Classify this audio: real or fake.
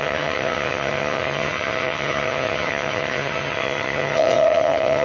fake